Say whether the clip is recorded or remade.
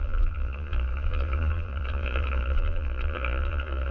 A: remade